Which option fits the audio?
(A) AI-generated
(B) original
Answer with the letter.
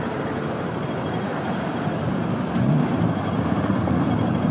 A